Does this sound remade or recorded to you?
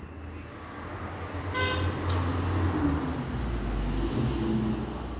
recorded